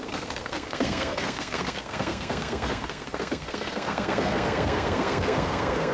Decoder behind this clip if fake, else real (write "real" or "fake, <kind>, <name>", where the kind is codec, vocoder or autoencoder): fake, codec, SNAC